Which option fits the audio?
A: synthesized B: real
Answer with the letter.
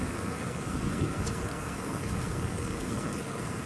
A